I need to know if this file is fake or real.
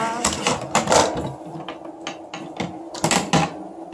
real